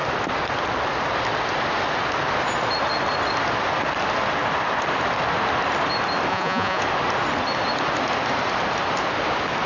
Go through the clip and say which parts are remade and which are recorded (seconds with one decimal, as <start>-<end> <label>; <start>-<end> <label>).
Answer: 0.0-6.3 recorded; 6.3-6.8 remade; 6.8-9.7 recorded